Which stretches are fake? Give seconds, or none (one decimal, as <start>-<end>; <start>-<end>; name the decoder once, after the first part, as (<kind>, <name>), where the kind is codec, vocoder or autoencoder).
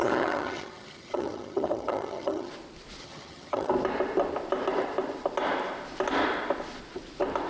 0.0-2.5 (vocoder, HiFi-GAN); 3.0-3.7